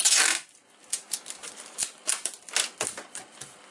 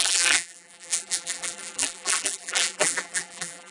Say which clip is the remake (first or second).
second